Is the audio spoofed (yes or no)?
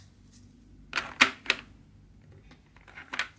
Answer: no